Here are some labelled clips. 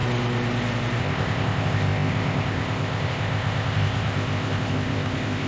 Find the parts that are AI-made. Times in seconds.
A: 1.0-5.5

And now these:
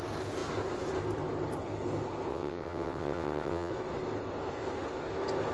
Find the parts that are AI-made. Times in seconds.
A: 2.3-3.7

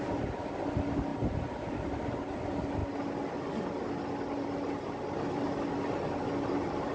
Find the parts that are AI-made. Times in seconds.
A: none